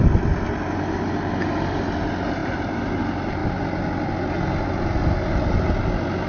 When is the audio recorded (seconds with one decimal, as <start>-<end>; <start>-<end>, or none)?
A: 0.0-2.4; 3.0-6.3